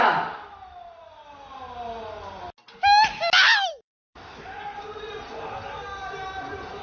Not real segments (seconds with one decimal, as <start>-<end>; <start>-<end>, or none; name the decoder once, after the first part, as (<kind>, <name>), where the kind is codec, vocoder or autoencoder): 3.7-4.6 (autoencoder, DAC-VAE)